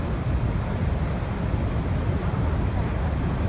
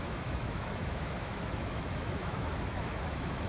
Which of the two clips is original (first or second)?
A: first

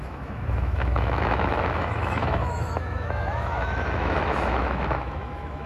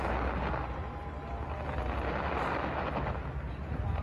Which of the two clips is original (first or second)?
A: second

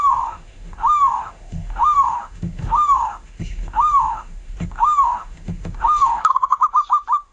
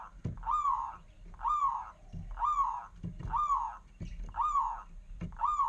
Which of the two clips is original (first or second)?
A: second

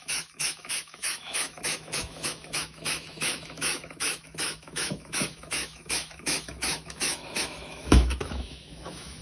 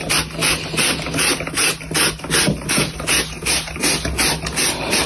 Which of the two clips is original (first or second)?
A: second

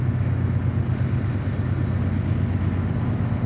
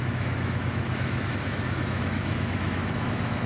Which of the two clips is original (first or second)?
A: first